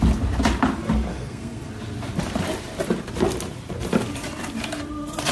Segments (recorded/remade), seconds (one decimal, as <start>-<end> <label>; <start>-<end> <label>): 0.0-1.1 recorded; 1.1-1.7 remade; 1.7-5.3 recorded